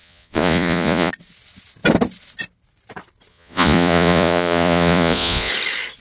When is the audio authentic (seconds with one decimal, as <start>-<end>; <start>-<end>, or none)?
1.1-3.3; 5.5-6.0